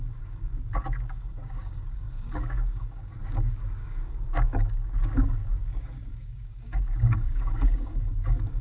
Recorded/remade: remade